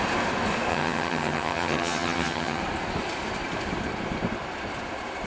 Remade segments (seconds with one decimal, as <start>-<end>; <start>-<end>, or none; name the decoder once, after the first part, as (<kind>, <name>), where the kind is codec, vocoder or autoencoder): 0.7-2.6 (vocoder, HiFi-GAN)